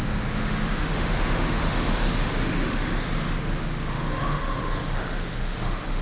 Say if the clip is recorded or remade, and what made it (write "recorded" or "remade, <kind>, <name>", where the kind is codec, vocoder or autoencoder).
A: remade, autoencoder, DAC-VAE